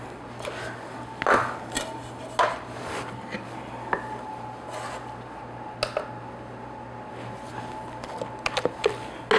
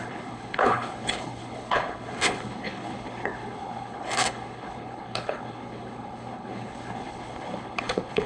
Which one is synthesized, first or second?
second